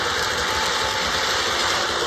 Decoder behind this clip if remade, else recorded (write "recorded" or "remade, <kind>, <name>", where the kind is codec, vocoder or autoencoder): recorded